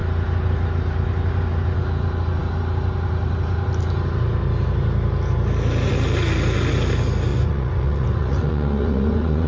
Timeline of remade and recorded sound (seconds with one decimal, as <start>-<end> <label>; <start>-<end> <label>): 0.0-7.3 recorded; 7.3-9.5 remade

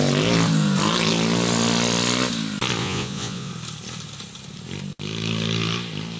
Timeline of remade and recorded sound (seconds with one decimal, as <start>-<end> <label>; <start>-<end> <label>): 0.0-2.8 recorded; 2.8-3.5 remade; 3.5-6.2 recorded

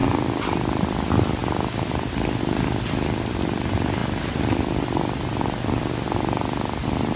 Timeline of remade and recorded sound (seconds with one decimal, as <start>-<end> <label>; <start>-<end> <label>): 0.0-7.2 recorded

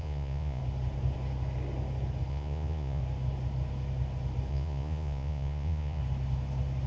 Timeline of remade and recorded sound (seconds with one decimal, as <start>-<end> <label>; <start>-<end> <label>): 0.0-0.6 remade; 0.6-2.3 recorded; 2.3-3.0 remade; 3.0-4.5 recorded; 4.5-6.0 remade; 6.0-6.9 recorded

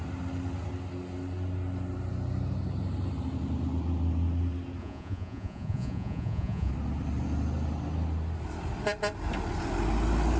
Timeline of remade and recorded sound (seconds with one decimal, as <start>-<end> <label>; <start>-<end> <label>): 0.0-4.8 recorded; 4.8-6.7 remade; 6.7-10.4 recorded

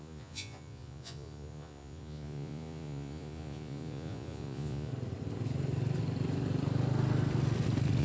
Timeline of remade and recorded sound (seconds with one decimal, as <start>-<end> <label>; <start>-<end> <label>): 0.0-4.9 remade; 4.9-8.0 recorded